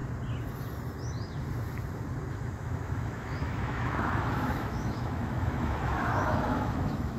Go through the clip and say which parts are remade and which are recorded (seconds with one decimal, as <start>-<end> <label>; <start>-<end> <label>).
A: 0.0-2.3 recorded; 2.3-7.2 remade